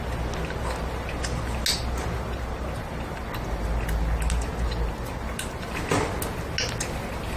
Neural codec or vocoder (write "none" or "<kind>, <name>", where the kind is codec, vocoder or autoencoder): none